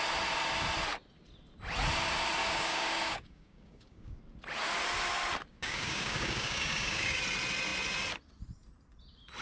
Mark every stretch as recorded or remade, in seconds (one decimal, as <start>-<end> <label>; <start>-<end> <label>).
0.0-2.4 recorded; 2.4-4.2 remade; 4.2-5.5 recorded; 5.5-7.2 remade; 7.2-9.4 recorded